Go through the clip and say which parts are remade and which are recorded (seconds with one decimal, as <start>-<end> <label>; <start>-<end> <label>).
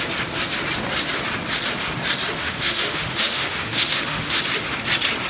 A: 0.0-2.4 recorded; 2.4-4.4 remade; 4.4-5.3 recorded